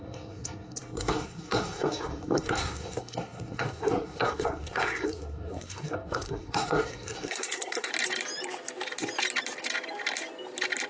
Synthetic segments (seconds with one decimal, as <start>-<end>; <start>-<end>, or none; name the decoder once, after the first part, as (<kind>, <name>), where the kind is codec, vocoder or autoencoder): 0.0-7.9 (codec, SNAC)